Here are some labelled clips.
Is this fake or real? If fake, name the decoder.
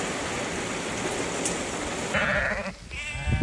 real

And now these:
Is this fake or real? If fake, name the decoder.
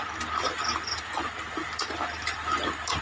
real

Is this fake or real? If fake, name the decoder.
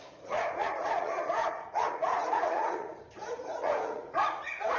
fake, vocoder, Vocos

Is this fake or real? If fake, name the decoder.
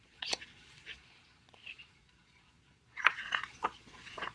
fake, vocoder, Vocos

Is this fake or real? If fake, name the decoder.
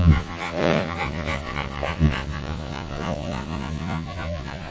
fake, vocoder, Vocos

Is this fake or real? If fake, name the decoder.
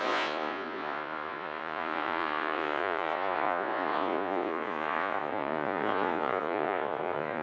fake, vocoder, Vocos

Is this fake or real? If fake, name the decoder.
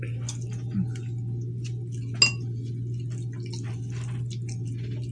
real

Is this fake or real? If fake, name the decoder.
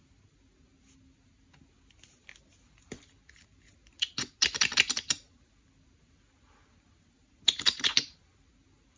real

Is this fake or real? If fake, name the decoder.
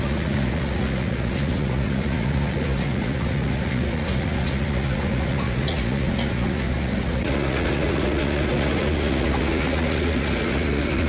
fake, vocoder, Vocos